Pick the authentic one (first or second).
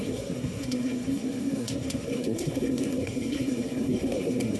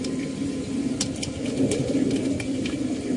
second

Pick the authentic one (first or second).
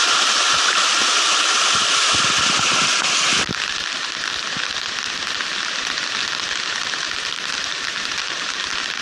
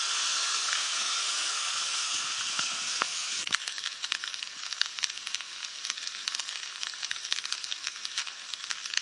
first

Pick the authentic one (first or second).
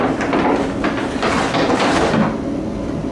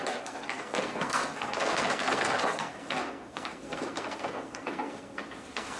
first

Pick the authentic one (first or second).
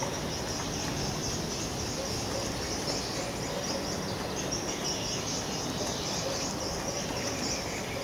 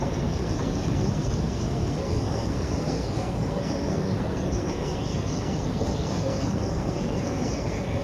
first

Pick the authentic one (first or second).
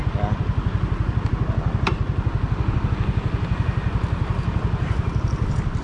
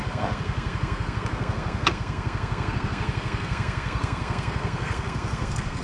first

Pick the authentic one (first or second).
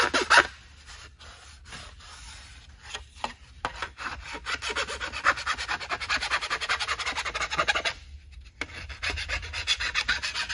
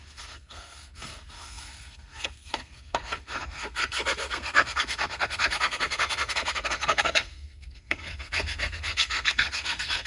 first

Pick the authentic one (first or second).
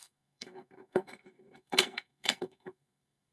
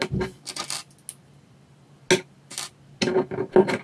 second